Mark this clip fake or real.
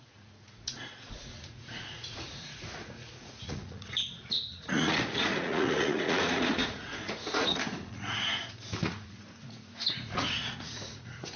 fake